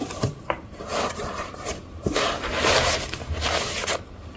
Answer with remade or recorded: remade